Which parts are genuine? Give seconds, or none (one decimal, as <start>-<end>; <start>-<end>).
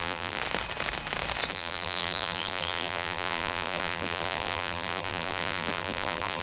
0.4-1.5